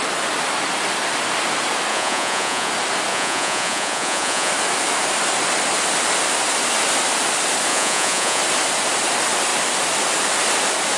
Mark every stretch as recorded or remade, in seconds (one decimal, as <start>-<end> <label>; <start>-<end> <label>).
0.0-1.9 recorded; 1.9-2.7 remade; 2.7-3.1 recorded; 3.1-4.5 remade; 4.5-7.7 recorded; 7.7-8.4 remade; 8.4-11.0 recorded